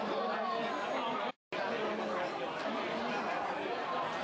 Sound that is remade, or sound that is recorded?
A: recorded